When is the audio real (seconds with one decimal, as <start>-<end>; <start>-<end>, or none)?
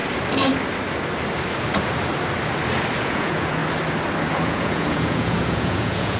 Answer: 0.0-3.0; 3.6-4.3